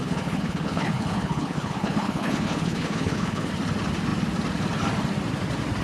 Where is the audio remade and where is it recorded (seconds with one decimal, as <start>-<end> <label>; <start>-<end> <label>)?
0.0-3.5 remade; 3.5-5.8 recorded

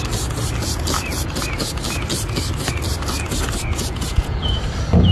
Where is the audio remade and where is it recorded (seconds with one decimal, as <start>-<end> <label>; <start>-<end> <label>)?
0.0-3.7 recorded; 3.7-4.6 remade; 4.6-5.1 recorded

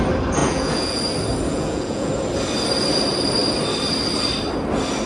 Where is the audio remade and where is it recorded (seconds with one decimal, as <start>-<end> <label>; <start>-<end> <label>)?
0.0-0.4 recorded; 0.4-1.0 remade; 1.0-1.5 recorded; 1.5-2.1 remade; 2.1-5.1 recorded

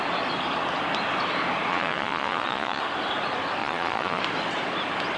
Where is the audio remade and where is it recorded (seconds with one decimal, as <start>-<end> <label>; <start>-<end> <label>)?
0.0-1.7 recorded; 1.7-2.8 remade; 2.8-3.6 recorded; 3.6-4.2 remade; 4.2-5.2 recorded

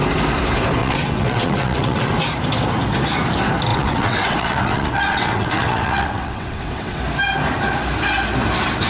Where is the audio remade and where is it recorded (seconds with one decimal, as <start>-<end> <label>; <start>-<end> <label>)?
0.0-0.8 recorded; 0.8-2.1 remade; 2.1-3.7 recorded; 3.7-7.0 remade; 7.0-8.9 recorded

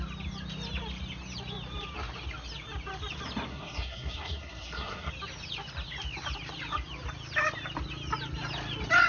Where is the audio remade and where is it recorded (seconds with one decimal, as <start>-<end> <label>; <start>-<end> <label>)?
0.0-3.5 recorded; 3.5-5.1 remade; 5.1-9.1 recorded

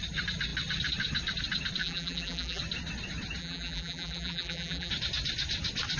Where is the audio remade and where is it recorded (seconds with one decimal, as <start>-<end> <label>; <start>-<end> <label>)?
0.0-1.8 recorded; 1.8-2.6 remade; 2.6-3.4 recorded; 3.4-4.9 remade; 4.9-6.0 recorded

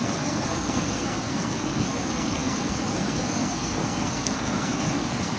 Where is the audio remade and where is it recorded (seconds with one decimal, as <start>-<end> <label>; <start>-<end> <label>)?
0.0-5.4 remade